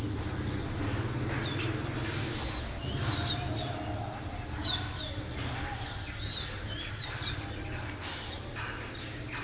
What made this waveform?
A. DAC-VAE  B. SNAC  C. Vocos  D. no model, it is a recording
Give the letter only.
D